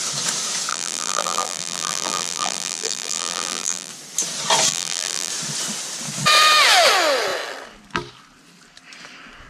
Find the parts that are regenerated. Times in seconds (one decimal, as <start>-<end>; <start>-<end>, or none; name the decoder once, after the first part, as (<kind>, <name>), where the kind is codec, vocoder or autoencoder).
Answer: 0.7-3.9 (vocoder, BigVGAN v2); 4.7-5.3